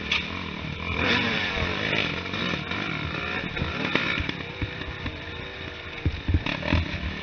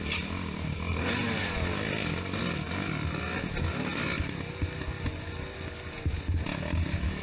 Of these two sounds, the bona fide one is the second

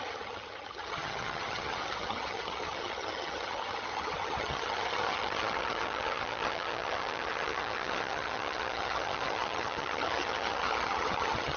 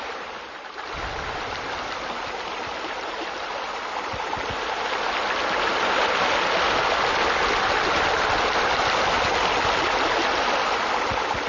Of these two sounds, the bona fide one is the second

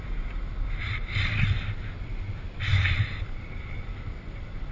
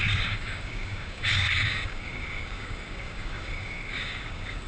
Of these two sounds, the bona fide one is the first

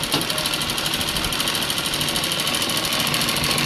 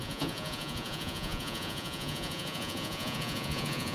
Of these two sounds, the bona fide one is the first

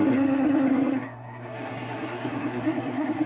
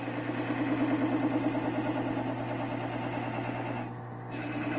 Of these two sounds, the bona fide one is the second